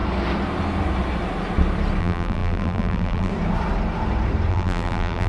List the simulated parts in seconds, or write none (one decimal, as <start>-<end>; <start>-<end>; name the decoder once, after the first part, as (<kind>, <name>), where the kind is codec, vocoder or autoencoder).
2.0-3.3 (vocoder, BigVGAN v2); 4.5-5.3